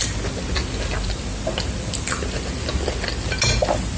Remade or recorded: recorded